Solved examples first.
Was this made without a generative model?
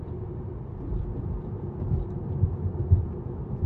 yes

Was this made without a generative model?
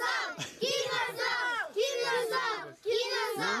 yes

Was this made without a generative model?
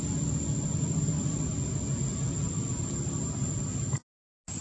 yes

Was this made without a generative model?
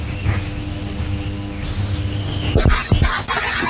yes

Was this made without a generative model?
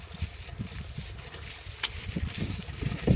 yes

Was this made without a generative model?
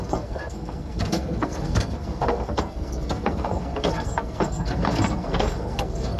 no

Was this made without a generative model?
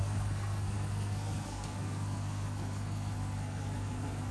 no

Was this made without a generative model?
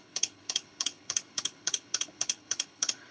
no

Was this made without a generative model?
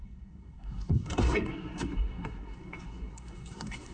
no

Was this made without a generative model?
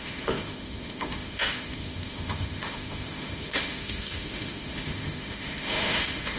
no